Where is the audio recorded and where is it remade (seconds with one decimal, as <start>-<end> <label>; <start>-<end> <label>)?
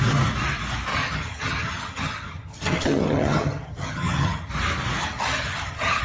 0.0-0.9 recorded; 0.9-4.5 remade; 4.5-5.0 recorded; 5.0-6.0 remade